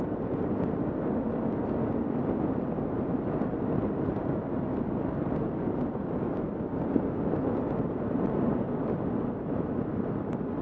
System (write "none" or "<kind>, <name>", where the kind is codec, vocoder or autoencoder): none